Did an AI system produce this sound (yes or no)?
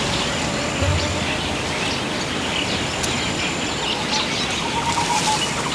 no